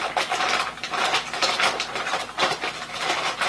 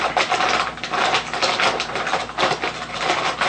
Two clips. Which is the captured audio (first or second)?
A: second